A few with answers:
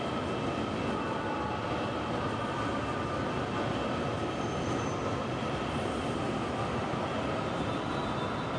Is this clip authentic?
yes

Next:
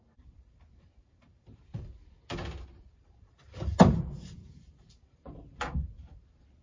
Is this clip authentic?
no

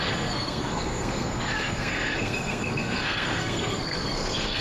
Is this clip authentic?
no